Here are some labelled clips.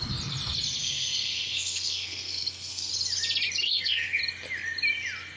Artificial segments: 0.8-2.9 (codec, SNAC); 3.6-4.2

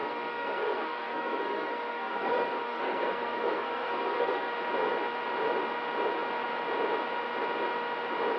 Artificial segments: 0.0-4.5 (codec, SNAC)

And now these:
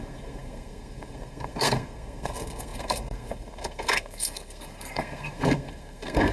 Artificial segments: 0.0-6.3 (codec, SNAC)

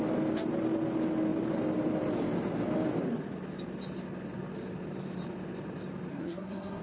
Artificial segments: 6.1-6.8 (codec, SNAC)